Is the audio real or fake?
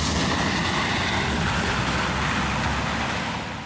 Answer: real